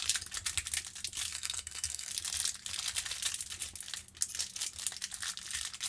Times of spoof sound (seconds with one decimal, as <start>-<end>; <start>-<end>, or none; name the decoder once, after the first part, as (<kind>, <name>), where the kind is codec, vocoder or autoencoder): 1.3-2.1 (codec, SNAC)